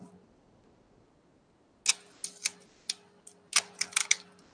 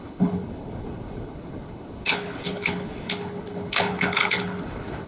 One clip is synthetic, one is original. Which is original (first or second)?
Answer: first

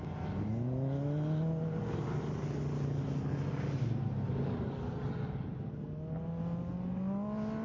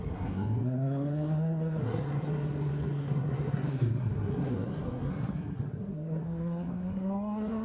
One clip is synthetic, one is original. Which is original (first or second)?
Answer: first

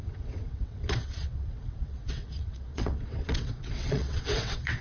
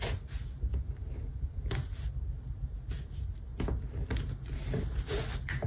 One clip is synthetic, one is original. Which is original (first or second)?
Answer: second